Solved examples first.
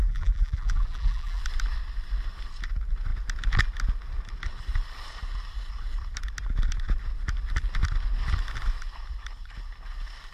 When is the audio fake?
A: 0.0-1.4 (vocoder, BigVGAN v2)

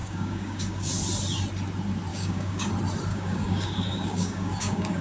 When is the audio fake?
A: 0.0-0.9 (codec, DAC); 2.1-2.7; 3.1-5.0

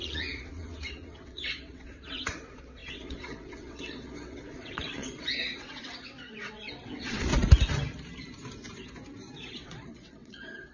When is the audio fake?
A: 0.0-7.3 (vocoder, WaveNeXt); 9.5-10.7

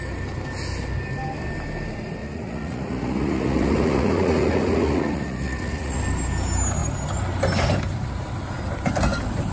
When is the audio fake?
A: 2.2-6.0 (vocoder, Vocos)

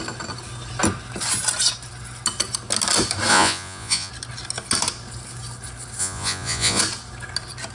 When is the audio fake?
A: 3.3-4.1 (vocoder, Vocos); 6.0-6.8

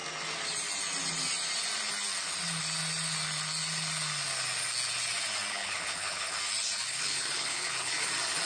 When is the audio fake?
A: 5.5-6.4 (codec, HILCodec); 6.9-8.1

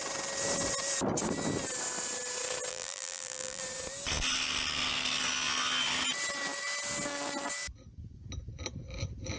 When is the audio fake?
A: 2.7-3.6 (vocoder, BigVGAN v2)